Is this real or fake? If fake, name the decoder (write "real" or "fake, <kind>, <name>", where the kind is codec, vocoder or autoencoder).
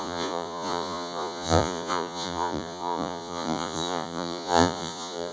fake, vocoder, Vocos